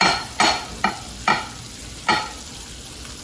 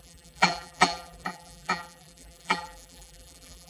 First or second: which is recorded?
first